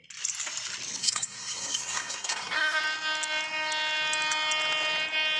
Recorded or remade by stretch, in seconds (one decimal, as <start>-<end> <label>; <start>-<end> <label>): 0.0-1.0 recorded; 1.0-2.8 remade; 2.8-5.4 recorded